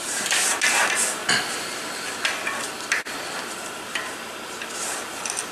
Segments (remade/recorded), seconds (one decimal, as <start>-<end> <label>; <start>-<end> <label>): 0.0-5.5 recorded